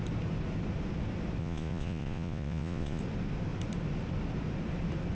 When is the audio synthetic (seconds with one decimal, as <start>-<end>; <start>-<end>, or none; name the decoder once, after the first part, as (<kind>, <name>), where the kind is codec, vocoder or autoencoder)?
1.4-3.0 (vocoder, Vocos)